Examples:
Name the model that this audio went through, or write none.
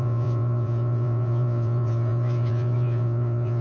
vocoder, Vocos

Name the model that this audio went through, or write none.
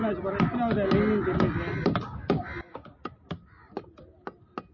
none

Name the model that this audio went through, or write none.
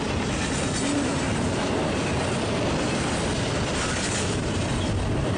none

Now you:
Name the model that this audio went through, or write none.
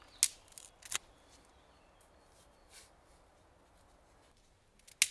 none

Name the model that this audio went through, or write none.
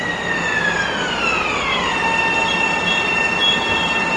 none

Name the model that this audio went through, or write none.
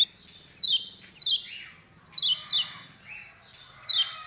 none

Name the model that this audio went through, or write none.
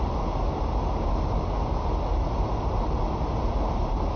none